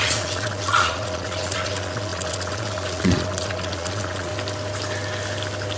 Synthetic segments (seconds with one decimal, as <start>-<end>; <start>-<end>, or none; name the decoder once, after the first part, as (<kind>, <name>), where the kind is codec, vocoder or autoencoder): 0.0-4.3 (vocoder, Vocos)